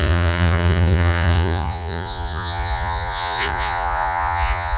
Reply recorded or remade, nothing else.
remade